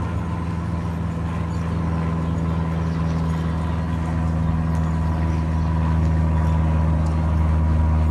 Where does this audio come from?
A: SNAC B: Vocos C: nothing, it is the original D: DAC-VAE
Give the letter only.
C